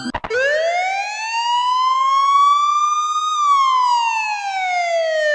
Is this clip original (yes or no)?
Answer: yes